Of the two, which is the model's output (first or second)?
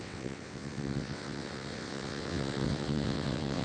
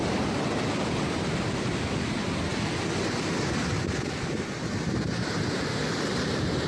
first